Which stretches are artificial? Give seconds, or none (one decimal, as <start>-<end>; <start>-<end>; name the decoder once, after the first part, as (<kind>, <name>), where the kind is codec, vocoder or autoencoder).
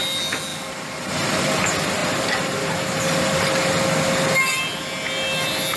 none